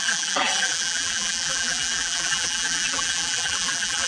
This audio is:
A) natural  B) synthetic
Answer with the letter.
B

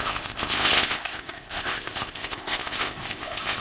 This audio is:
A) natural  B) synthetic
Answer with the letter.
B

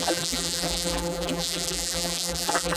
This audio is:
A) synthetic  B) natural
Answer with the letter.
A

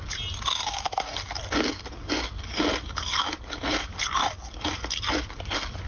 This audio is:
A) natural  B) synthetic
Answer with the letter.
A